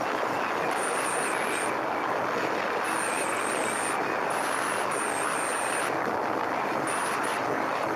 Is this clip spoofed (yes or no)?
no